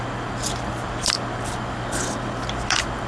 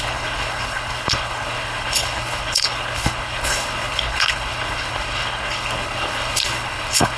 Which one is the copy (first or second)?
second